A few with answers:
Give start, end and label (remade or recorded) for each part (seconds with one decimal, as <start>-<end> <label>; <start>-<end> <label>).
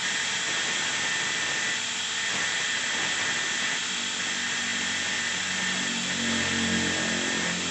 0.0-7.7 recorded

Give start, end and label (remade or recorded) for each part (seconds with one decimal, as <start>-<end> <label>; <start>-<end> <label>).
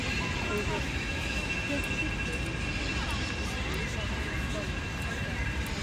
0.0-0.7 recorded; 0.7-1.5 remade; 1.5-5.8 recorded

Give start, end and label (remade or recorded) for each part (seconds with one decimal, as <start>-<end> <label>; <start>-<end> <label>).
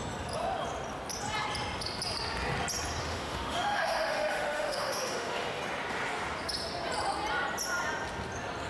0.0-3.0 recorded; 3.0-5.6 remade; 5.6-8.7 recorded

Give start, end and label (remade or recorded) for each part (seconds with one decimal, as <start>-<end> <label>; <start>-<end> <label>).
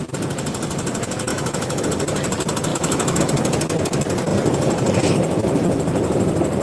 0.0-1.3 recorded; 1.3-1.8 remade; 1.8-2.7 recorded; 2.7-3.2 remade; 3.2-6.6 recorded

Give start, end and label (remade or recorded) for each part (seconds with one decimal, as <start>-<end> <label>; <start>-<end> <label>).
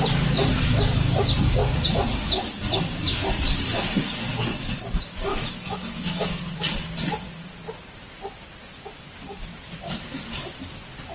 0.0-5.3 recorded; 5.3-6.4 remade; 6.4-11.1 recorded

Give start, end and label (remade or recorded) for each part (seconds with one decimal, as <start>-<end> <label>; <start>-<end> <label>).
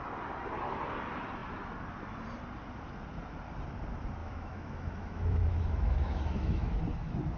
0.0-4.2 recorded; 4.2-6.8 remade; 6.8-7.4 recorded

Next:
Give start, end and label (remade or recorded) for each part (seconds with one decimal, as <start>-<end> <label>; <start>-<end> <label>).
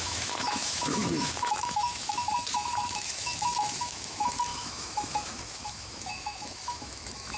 0.0-7.4 remade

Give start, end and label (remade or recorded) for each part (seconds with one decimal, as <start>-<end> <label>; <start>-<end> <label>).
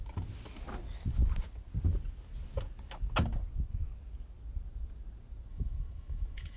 0.0-5.5 recorded; 5.5-6.6 remade